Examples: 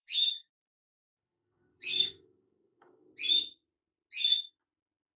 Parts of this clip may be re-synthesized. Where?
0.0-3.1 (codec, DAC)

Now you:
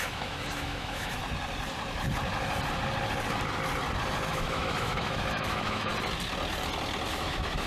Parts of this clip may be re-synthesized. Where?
0.0-1.2 (autoencoder, DAC-VAE); 4.3-5.9; 7.1-7.7

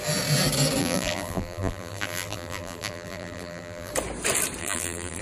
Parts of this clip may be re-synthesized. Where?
0.8-3.9 (vocoder, BigVGAN v2); 4.6-5.2